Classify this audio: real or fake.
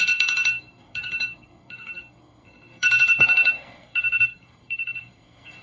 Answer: fake